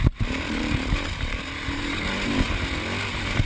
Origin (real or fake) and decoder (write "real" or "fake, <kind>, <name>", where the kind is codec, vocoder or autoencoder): real